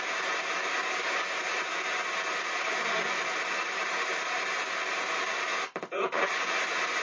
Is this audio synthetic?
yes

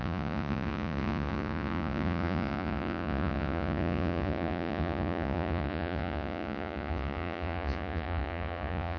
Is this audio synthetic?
yes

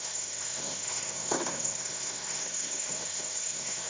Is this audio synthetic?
yes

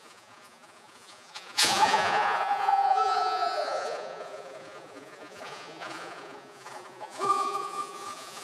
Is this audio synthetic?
yes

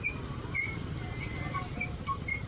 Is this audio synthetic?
yes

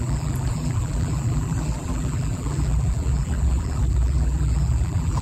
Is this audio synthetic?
yes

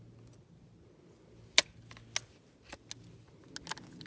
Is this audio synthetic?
no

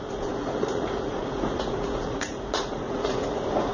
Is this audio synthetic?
yes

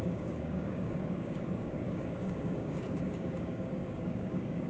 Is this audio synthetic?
yes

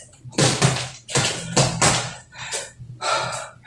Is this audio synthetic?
no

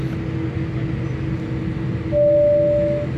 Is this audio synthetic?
no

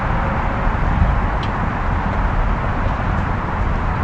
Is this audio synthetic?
no